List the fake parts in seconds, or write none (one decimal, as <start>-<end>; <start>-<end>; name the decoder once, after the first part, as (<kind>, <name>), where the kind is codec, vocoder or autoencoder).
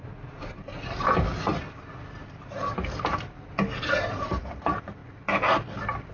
none